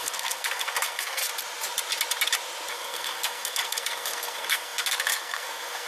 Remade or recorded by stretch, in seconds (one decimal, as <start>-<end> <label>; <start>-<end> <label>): 0.0-1.2 remade; 1.2-2.7 recorded; 2.7-5.9 remade